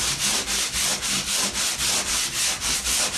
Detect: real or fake real